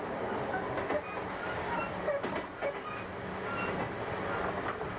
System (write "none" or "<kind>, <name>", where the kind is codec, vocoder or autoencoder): none